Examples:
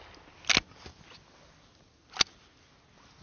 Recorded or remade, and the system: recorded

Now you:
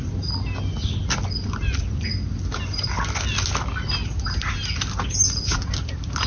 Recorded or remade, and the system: recorded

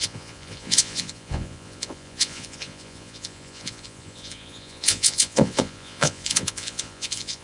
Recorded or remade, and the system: remade, vocoder, Vocos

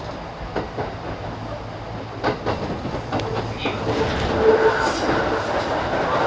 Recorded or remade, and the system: recorded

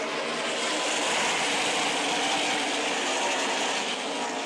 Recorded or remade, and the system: recorded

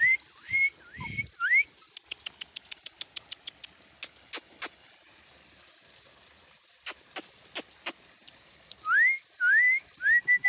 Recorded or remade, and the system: recorded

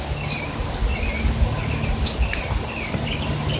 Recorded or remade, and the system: recorded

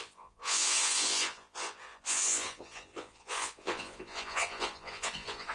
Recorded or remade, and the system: remade, vocoder, Vocos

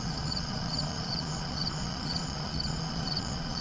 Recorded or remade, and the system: remade, vocoder, Vocos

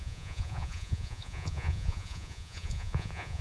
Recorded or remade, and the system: remade, vocoder, Vocos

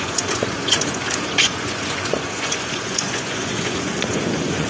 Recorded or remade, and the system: remade, vocoder, Vocos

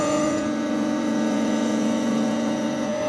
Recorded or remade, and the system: remade, vocoder, Vocos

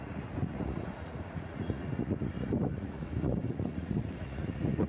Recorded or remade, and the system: remade, vocoder, Vocos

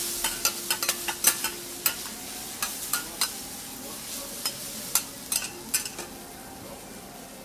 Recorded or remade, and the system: recorded